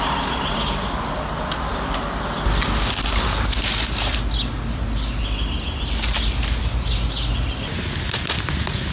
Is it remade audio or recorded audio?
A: recorded